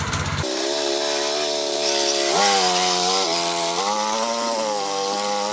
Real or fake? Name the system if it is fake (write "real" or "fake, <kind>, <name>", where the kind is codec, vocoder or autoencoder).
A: real